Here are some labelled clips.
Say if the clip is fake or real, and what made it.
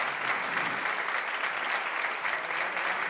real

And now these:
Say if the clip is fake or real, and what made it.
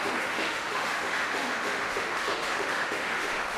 fake, autoencoder, DAC-VAE